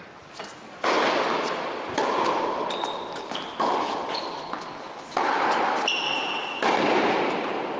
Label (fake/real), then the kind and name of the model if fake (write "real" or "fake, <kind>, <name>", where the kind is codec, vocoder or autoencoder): real